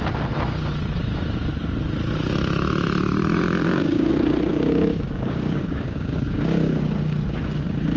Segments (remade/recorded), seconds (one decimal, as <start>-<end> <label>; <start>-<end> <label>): 0.0-3.6 recorded; 3.6-4.1 remade; 4.1-4.5 recorded; 4.5-6.8 remade; 6.8-8.0 recorded